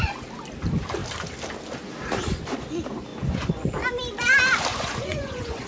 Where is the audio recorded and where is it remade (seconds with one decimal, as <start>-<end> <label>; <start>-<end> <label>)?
0.0-3.1 recorded; 3.1-3.7 remade; 3.7-4.7 recorded; 4.7-5.7 remade

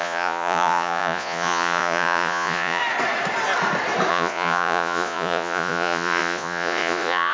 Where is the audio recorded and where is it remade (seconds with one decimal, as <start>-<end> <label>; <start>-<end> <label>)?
0.0-2.8 remade; 2.8-4.1 recorded; 4.1-7.3 remade

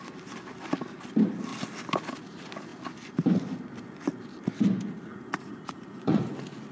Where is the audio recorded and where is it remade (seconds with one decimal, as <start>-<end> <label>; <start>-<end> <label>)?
0.0-5.1 recorded; 5.1-6.3 remade; 6.3-6.7 recorded

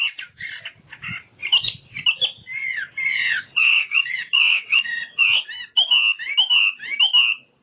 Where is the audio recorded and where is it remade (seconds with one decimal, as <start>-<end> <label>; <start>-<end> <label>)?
0.0-3.1 recorded; 3.1-5.2 remade; 5.2-7.6 recorded

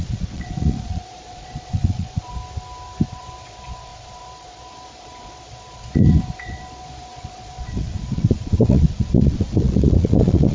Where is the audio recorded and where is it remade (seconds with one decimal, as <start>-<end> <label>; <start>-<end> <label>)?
0.0-2.4 remade; 2.4-3.1 recorded; 3.1-10.5 remade

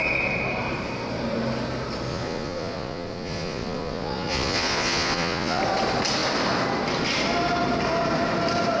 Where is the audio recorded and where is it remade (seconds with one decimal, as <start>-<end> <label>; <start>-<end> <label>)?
0.0-2.1 recorded; 2.1-5.6 remade; 5.6-8.8 recorded

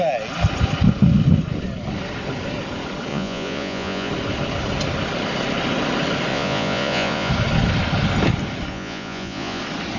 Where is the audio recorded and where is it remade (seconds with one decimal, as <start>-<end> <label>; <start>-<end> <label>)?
0.0-3.1 recorded; 3.1-4.1 remade; 4.1-6.3 recorded; 6.3-7.3 remade; 7.3-8.7 recorded; 8.7-9.6 remade; 9.6-10.0 recorded

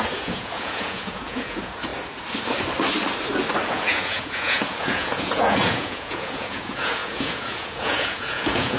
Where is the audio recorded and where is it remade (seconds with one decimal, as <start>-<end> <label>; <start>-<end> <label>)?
0.0-1.9 remade; 1.9-3.7 recorded; 3.7-8.8 remade